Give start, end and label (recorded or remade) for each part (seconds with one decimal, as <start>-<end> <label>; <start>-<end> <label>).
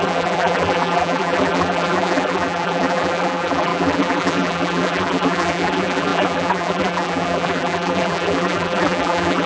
0.0-9.5 remade